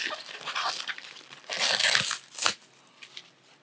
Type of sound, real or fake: real